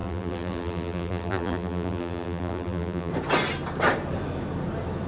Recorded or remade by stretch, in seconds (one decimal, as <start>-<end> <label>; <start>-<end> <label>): 0.0-3.1 remade; 3.1-5.1 recorded